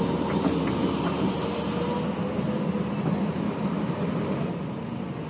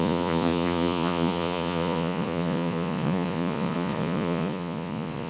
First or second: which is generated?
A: second